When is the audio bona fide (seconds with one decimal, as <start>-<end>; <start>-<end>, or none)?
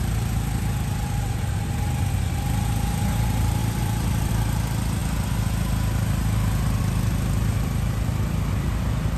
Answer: 0.0-3.6; 4.3-9.2